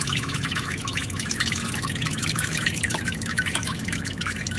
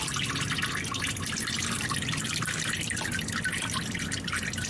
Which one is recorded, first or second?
second